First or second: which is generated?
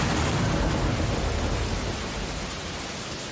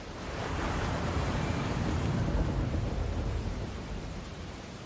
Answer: second